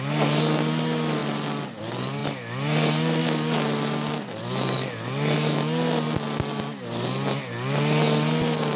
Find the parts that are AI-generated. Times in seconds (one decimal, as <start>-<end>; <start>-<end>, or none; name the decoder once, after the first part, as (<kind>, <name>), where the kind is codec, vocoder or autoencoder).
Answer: none